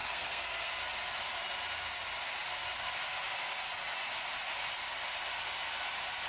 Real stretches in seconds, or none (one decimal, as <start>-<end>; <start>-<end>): 0.7-6.3